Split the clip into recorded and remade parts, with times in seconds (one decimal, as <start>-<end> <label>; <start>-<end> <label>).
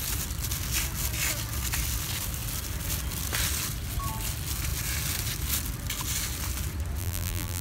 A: 0.0-7.0 recorded; 7.0-7.6 remade